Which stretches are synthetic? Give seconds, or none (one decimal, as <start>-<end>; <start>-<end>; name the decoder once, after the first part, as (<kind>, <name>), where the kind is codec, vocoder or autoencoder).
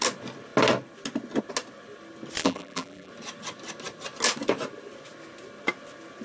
2.4-3.1 (vocoder, BigVGAN v2)